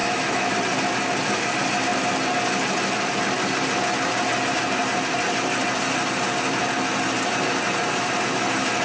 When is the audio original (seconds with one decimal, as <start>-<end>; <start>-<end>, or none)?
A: 0.5-8.8